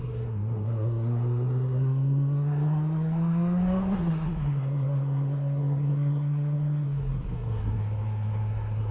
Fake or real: fake